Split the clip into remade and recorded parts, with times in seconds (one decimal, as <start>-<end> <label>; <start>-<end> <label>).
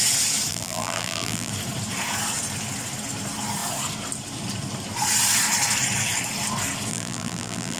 0.0-0.5 recorded; 0.5-1.5 remade; 1.5-6.9 recorded; 6.9-7.8 remade